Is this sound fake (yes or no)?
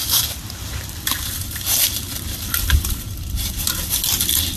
no